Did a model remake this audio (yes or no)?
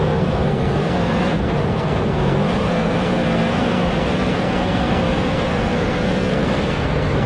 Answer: yes